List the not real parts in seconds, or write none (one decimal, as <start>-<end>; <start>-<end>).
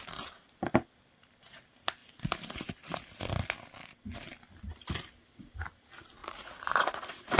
6.2-7.4